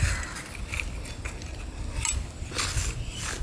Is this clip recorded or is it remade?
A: recorded